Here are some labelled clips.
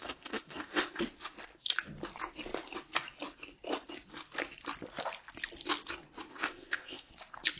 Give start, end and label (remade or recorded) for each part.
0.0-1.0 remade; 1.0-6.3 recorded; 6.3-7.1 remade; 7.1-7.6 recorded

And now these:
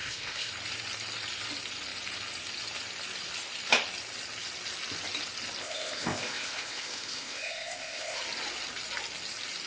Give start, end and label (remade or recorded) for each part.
0.0-0.5 remade; 0.5-5.6 recorded; 5.6-8.2 remade; 8.2-9.7 recorded

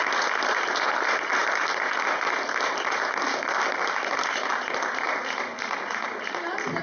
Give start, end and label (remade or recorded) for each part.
0.0-6.8 recorded

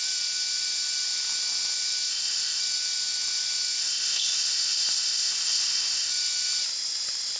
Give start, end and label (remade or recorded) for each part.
0.0-2.1 recorded; 2.1-2.6 remade; 2.6-3.8 recorded; 3.8-6.1 remade; 6.1-7.4 recorded

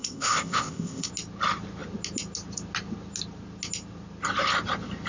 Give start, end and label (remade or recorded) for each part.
0.0-1.1 remade; 1.1-5.1 recorded

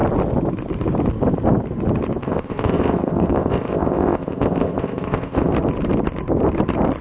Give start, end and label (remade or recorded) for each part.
0.0-2.2 recorded; 2.2-5.5 remade; 5.5-7.0 recorded

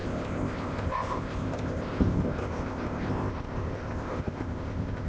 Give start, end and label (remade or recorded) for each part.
0.0-5.1 remade

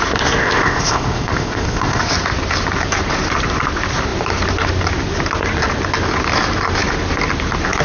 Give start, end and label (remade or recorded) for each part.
0.0-0.4 recorded; 0.4-2.0 remade; 2.0-7.8 recorded